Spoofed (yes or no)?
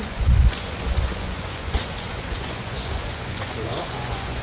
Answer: yes